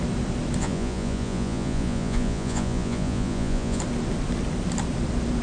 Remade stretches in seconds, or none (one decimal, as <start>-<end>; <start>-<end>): 0.6-3.8